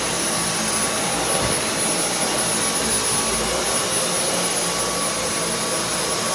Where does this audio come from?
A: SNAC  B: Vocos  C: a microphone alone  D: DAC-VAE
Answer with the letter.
C